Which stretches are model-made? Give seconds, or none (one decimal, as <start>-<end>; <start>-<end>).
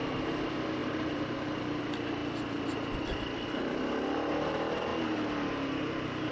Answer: 0.8-1.8